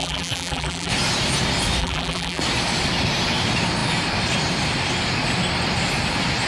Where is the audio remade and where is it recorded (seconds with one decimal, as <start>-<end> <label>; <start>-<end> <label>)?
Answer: 0.0-0.9 remade; 0.9-1.8 recorded; 1.8-2.4 remade; 2.4-6.5 recorded